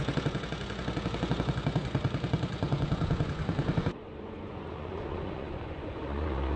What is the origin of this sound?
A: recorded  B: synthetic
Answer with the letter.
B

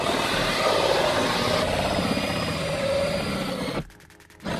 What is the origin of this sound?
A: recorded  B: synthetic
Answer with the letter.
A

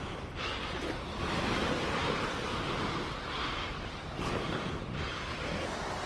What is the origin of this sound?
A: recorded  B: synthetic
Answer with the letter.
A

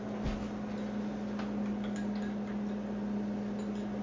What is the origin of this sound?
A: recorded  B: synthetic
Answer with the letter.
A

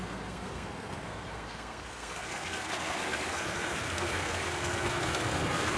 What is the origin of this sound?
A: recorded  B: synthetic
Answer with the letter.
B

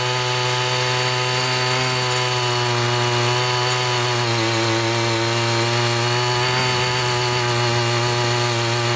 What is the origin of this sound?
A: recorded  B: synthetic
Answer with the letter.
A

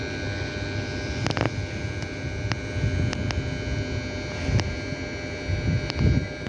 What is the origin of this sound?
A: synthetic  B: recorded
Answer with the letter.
B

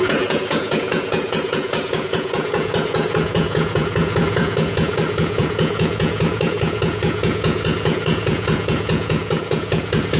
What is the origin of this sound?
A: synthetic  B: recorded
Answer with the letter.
A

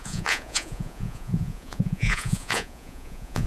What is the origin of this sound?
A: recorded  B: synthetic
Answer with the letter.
B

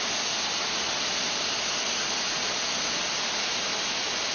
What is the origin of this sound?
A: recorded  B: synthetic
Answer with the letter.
A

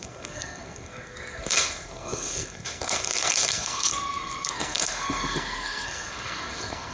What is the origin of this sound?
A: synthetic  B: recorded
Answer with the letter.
A